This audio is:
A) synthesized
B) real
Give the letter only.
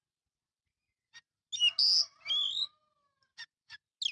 B